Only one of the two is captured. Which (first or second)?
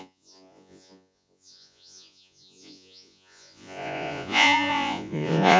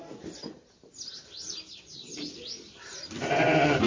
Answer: second